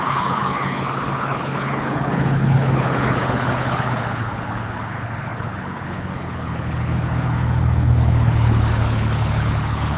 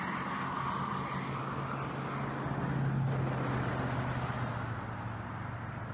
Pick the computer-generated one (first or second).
first